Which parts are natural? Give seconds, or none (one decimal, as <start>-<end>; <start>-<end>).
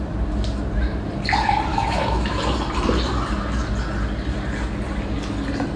0.0-1.7; 2.4-5.8